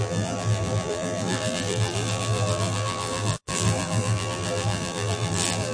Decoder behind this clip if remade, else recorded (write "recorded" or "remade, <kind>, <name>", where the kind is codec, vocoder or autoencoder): remade, vocoder, BigVGAN v2